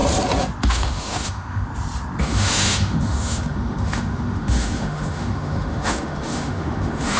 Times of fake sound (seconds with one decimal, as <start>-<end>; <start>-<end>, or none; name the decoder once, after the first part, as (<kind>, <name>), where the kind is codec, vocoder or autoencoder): 0.7-1.7 (autoencoder, DAC-VAE); 2.2-7.2